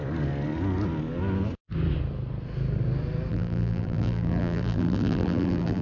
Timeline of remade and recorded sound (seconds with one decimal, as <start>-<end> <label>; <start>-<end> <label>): 0.0-3.3 recorded; 3.3-5.8 remade